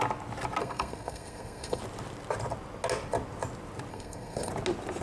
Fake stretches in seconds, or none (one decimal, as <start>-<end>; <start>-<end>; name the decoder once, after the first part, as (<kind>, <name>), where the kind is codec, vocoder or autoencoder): 0.6-1.8 (codec, SNAC); 3.9-4.5